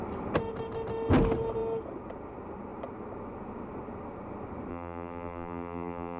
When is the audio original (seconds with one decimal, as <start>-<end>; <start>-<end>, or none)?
0.0-4.7